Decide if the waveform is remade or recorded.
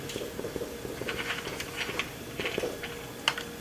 recorded